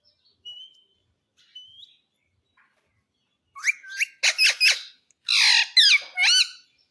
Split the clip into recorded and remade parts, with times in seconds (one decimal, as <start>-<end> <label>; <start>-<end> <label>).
0.0-6.9 recorded